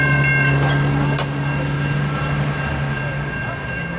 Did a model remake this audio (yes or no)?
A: no